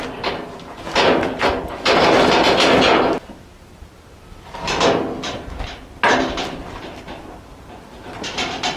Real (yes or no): yes